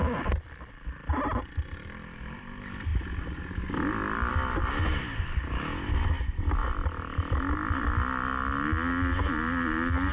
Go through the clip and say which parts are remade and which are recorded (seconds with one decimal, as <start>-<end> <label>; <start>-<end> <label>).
0.0-10.1 recorded

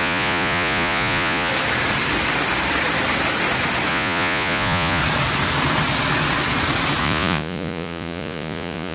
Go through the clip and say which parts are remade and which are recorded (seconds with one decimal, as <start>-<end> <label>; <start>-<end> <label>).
0.0-1.5 remade; 1.5-3.9 recorded; 3.9-5.0 remade; 5.0-7.0 recorded; 7.0-8.9 remade

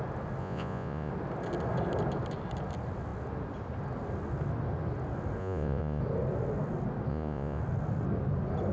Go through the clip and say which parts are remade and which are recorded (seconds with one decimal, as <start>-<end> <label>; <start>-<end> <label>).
0.0-0.4 recorded; 0.4-1.1 remade; 1.1-5.4 recorded; 5.4-6.0 remade; 6.0-7.1 recorded; 7.1-7.6 remade; 7.6-8.7 recorded

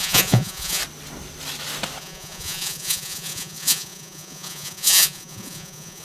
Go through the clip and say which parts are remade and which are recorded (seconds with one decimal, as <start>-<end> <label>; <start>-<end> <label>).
0.0-0.8 remade; 0.8-2.0 recorded; 2.0-6.0 remade

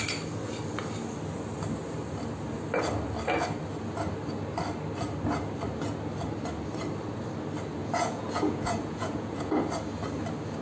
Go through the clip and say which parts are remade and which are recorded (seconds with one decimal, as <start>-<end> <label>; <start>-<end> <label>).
0.0-7.8 recorded; 7.8-9.6 remade; 9.6-10.6 recorded